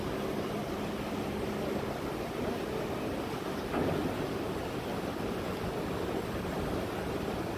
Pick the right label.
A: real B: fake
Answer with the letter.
A